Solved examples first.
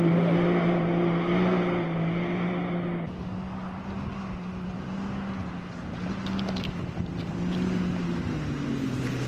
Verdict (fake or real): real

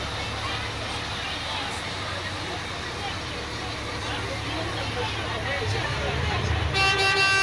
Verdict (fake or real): real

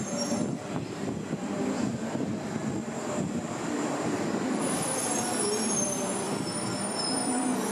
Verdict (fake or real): fake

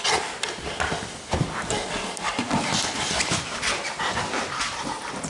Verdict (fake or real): fake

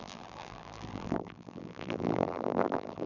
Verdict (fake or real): fake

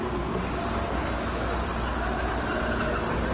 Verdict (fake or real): real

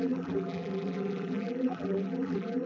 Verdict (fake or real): fake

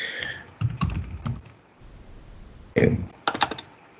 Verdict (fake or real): real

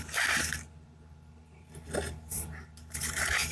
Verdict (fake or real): fake